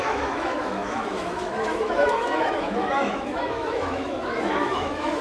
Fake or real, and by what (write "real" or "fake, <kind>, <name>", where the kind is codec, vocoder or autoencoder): fake, autoencoder, DAC-VAE